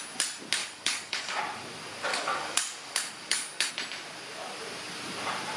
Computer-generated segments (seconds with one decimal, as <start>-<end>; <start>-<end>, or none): 0.6-1.4; 2.1-3.7